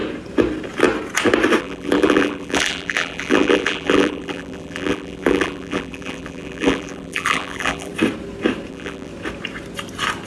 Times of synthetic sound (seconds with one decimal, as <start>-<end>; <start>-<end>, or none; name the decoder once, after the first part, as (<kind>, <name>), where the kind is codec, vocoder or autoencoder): 1.6-7.9 (vocoder, BigVGAN v2); 8.7-9.1